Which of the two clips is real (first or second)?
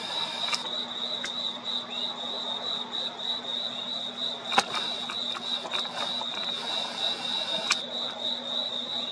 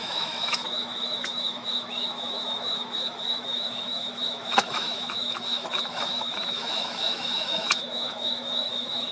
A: first